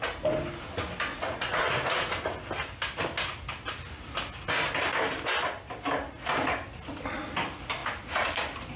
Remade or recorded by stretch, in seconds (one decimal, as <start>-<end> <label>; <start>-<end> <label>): 0.0-1.1 recorded; 1.1-2.1 remade; 2.1-8.8 recorded